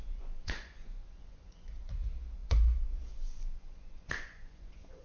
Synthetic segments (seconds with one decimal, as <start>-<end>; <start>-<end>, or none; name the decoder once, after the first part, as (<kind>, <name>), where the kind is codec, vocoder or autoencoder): 0.0-5.0 (vocoder, Vocos)